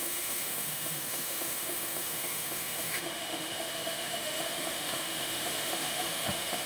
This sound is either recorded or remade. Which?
remade